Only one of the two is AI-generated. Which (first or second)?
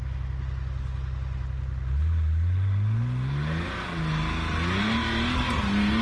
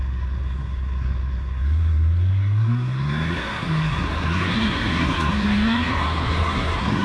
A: second